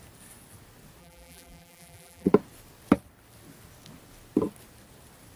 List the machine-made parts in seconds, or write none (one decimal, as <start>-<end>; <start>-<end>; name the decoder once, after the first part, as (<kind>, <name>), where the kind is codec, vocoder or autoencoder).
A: 1.0-2.3 (vocoder, BigVGAN v2)